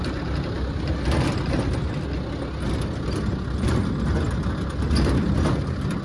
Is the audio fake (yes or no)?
no